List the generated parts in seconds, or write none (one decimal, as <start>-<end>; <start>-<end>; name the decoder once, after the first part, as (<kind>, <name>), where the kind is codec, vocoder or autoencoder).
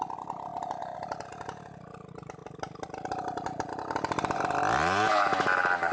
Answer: none